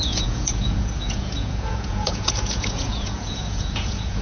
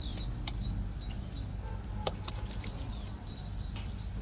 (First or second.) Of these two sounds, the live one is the second